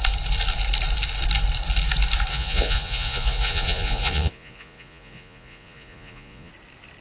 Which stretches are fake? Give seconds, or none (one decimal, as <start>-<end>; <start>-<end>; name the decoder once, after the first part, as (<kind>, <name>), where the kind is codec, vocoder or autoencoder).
2.3-6.5 (vocoder, Vocos)